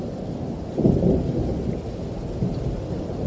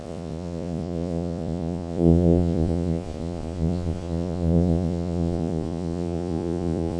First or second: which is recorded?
first